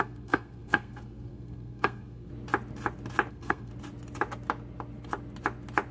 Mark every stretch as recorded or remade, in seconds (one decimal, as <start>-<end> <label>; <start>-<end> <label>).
0.0-2.3 remade; 2.3-3.3 recorded; 3.3-3.7 remade; 3.7-5.9 recorded

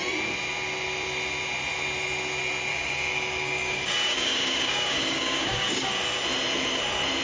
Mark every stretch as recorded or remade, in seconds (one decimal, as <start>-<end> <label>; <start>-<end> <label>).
0.0-2.7 recorded; 2.7-6.0 remade; 6.0-7.2 recorded

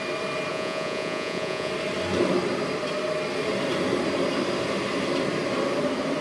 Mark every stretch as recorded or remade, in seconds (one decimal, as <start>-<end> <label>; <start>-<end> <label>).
0.0-0.5 recorded; 0.5-1.7 remade; 1.7-6.2 recorded

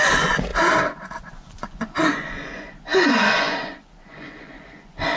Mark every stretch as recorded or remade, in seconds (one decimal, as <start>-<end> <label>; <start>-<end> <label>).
0.0-0.5 remade; 0.5-1.3 recorded; 1.3-5.2 remade

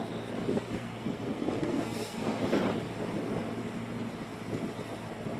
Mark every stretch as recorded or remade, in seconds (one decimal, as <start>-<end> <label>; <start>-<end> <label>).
0.0-0.5 recorded; 0.5-2.6 remade; 2.6-5.4 recorded